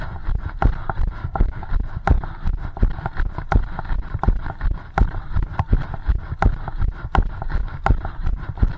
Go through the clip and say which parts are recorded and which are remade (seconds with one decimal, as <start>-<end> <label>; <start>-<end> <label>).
0.0-1.2 recorded; 1.2-1.7 remade; 1.7-8.8 recorded